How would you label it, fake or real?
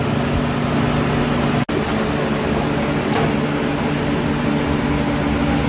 real